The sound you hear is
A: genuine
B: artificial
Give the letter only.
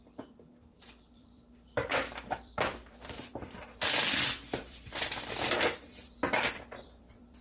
B